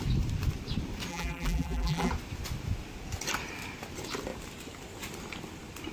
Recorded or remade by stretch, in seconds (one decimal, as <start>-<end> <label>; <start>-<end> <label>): 0.0-1.1 recorded; 1.1-2.1 remade; 2.1-5.9 recorded